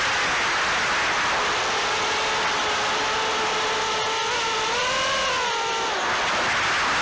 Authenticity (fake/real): real